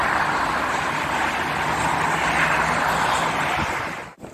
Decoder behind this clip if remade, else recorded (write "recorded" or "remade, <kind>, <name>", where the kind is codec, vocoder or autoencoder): recorded